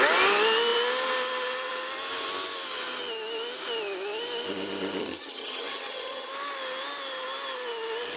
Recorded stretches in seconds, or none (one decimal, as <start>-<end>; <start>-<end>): 0.0-5.0; 6.3-8.2